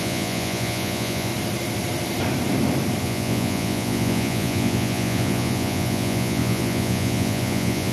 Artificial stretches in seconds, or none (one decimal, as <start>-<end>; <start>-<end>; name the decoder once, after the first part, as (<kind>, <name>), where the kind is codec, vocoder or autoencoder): 0.0-1.3 (vocoder, Vocos); 3.0-7.9